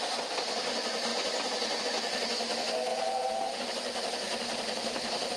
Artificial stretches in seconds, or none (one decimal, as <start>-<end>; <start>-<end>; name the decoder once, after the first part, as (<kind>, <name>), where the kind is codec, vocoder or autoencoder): 2.9-3.6 (vocoder, Vocos)